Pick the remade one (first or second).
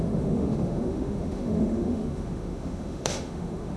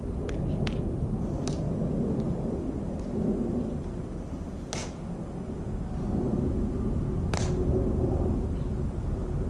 first